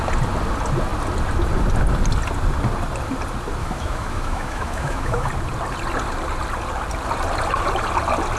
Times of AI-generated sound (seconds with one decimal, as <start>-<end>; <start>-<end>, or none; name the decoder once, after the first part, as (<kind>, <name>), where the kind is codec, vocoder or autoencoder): 3.6-5.3 (autoencoder, DAC-VAE)